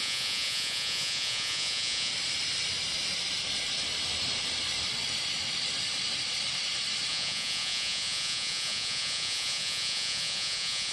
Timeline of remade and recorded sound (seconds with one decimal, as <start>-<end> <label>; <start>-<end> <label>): 0.0-2.1 remade; 2.1-7.1 recorded; 7.1-10.9 remade